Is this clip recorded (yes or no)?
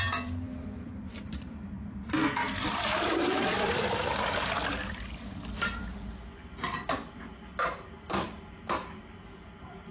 no